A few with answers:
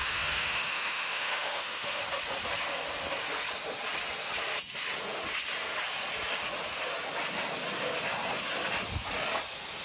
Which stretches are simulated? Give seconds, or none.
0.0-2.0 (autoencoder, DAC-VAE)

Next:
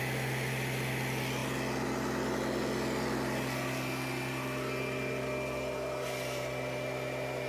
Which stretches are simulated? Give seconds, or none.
none

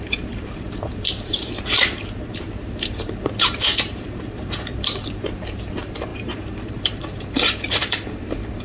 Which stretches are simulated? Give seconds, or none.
0.0-8.6 (vocoder, BigVGAN v2)

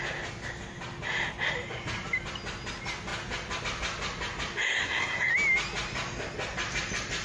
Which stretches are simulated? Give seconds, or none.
4.7-5.3 (codec, SNAC)

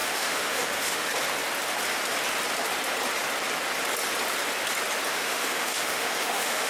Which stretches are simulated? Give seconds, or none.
0.0-1.1 (autoencoder, DAC-VAE); 5.1-6.7